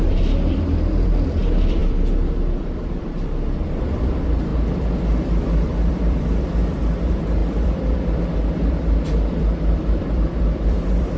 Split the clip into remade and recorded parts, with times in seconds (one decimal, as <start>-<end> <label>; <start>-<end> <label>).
0.0-11.2 remade